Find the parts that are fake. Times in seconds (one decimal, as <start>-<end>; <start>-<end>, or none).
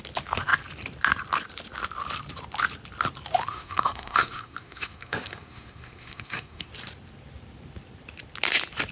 3.5-6.7